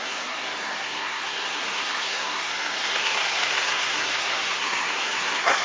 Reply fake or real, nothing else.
fake